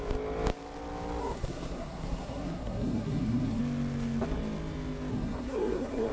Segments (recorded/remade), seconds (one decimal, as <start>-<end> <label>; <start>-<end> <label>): 0.0-1.2 recorded; 1.2-3.6 remade; 3.6-5.1 recorded; 5.1-6.1 remade

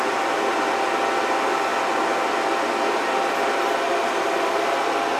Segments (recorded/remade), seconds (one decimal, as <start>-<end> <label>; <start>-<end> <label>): 0.0-5.2 recorded

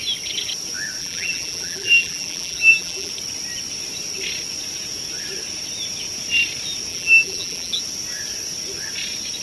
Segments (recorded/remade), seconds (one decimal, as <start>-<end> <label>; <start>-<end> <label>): 0.0-1.0 recorded; 1.0-3.1 remade; 3.1-6.9 recorded; 6.9-7.8 remade; 7.8-9.4 recorded

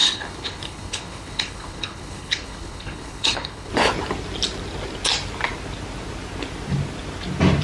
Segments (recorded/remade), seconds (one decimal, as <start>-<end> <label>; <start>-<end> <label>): 0.0-3.7 remade; 3.7-7.6 recorded

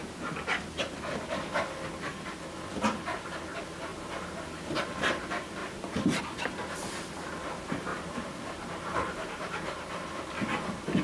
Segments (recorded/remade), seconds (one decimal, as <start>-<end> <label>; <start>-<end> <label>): 0.0-3.9 recorded; 3.9-4.7 remade; 4.7-5.6 recorded; 5.6-6.2 remade; 6.2-7.9 recorded; 7.9-10.3 remade; 10.3-11.0 recorded

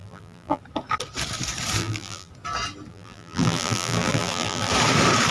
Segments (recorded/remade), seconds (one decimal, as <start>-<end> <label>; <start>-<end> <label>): 0.0-0.6 remade; 0.6-1.8 recorded; 1.8-2.3 remade; 2.3-2.9 recorded; 2.9-4.7 remade; 4.7-5.3 recorded

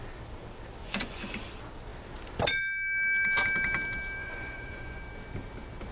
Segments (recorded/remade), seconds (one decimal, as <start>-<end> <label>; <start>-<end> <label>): 0.0-0.8 recorded; 0.8-1.3 remade; 1.3-4.2 recorded; 4.2-5.0 remade; 5.0-5.9 recorded